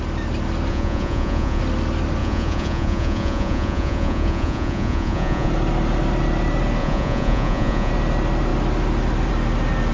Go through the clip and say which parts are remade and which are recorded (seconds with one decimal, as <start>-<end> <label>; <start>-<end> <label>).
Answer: 0.0-0.7 recorded; 0.7-1.6 remade; 1.6-2.2 recorded; 2.2-5.5 remade; 5.5-6.8 recorded; 6.8-7.9 remade; 7.9-9.9 recorded

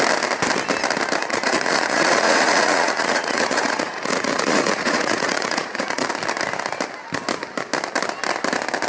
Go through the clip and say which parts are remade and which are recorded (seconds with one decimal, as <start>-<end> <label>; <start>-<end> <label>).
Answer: 0.0-1.2 recorded; 1.2-6.1 remade; 6.1-8.9 recorded

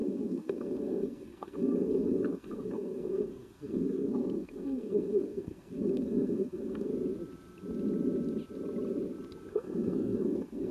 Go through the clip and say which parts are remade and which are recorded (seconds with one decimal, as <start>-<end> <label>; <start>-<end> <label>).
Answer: 0.0-6.9 remade; 6.9-9.5 recorded; 9.5-10.7 remade

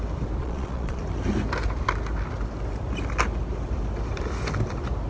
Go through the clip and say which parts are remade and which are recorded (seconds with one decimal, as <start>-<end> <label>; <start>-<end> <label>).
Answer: 0.0-0.4 recorded; 0.4-1.0 remade; 1.0-5.1 recorded

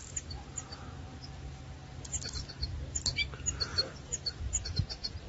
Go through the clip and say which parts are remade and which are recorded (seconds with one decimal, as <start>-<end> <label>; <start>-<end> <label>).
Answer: 0.0-3.7 recorded; 3.7-4.4 remade; 4.4-5.3 recorded

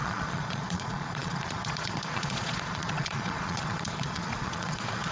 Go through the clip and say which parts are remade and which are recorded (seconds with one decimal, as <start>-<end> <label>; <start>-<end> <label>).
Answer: 0.0-5.1 remade

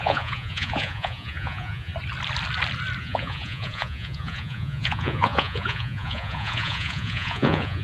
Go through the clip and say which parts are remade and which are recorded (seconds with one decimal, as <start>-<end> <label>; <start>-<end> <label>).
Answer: 0.0-1.9 remade; 1.9-3.0 recorded; 3.0-7.8 remade